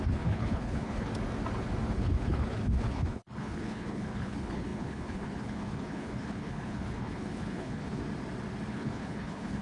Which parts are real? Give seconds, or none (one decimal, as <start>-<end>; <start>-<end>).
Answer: 1.1-1.9; 8.0-8.7